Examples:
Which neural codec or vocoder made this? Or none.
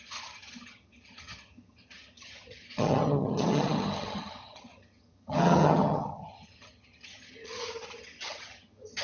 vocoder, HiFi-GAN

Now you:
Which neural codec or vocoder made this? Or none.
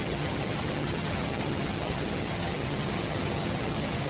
vocoder, HiFi-GAN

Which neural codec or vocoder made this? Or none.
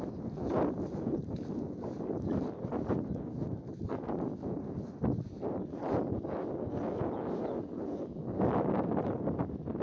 none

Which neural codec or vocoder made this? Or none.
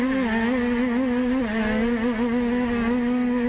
none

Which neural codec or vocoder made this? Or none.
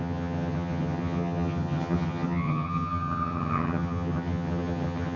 vocoder, HiFi-GAN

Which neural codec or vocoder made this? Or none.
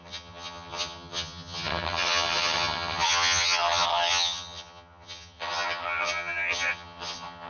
vocoder, HiFi-GAN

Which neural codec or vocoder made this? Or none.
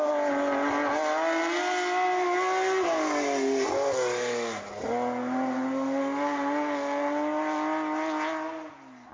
none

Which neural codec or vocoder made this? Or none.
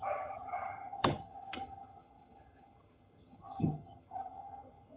vocoder, HiFi-GAN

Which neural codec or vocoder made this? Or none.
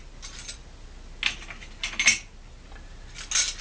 none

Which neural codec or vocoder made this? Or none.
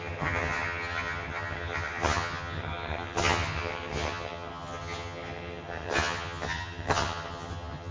vocoder, HiFi-GAN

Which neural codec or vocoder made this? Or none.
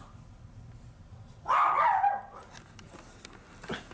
none